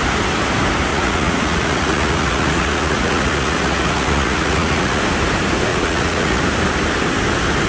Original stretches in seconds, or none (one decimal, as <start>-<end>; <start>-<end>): 0.0-0.9; 5.0-5.7; 6.4-7.7